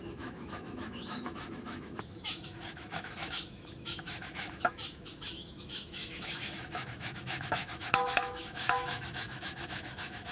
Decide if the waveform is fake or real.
fake